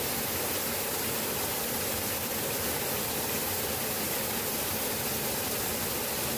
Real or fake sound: real